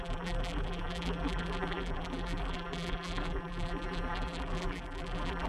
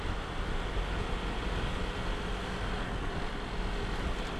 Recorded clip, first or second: second